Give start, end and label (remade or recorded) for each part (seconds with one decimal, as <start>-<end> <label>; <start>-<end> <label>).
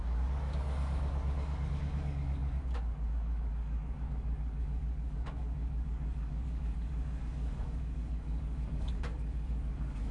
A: 0.0-10.1 remade